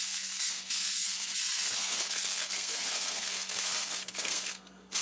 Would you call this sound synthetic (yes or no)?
yes